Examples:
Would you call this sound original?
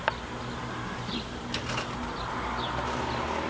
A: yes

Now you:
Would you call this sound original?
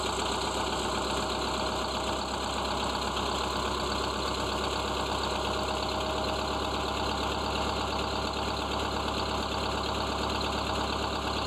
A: yes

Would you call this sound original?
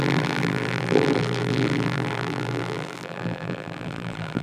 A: no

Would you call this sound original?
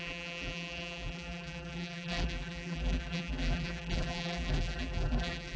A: no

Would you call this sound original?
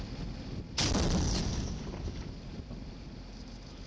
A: yes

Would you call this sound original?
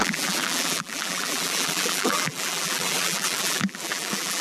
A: no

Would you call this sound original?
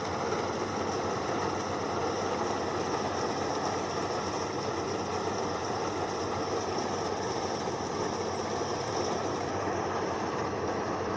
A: yes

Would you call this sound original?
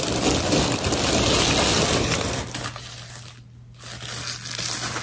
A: yes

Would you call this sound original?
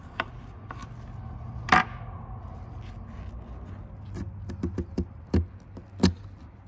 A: yes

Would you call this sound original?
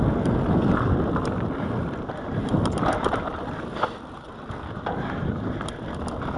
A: no